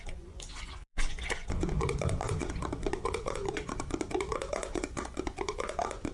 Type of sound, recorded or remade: remade